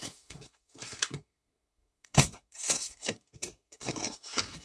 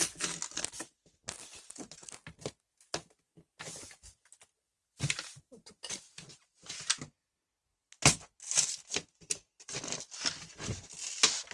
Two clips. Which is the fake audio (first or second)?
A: first